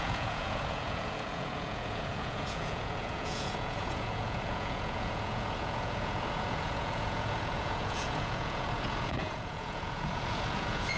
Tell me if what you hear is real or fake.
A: fake